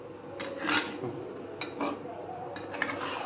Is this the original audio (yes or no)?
yes